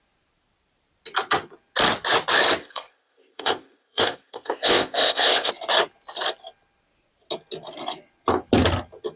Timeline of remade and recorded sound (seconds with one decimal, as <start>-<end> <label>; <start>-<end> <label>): 0.0-2.6 recorded; 2.6-5.5 remade; 5.5-9.2 recorded